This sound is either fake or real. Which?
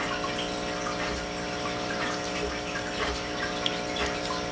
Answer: real